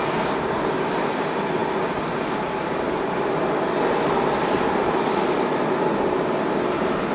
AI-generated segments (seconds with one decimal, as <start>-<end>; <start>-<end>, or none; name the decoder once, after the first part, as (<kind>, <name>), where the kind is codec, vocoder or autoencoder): none